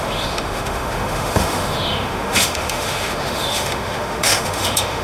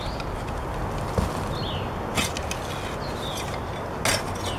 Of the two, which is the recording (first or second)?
second